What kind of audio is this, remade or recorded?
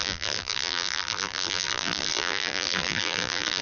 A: remade